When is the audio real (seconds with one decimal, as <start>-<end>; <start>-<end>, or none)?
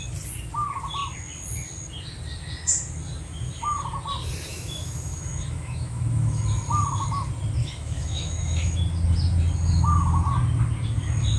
0.0-4.5; 6.4-7.6; 8.8-11.4